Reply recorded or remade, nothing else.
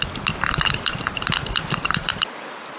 recorded